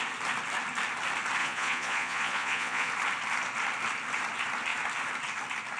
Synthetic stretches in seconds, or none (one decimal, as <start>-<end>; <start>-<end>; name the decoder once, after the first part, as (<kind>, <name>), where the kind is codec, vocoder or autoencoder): 1.4-2.9 (vocoder, Vocos)